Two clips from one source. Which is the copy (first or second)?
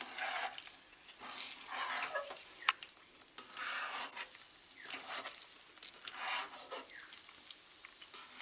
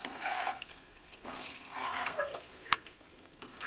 second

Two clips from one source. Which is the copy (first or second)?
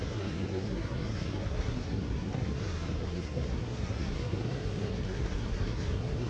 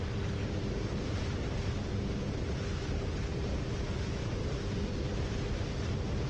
first